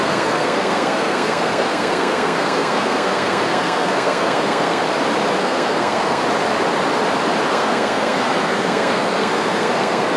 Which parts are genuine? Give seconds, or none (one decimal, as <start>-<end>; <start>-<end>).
4.8-5.4; 6.2-7.5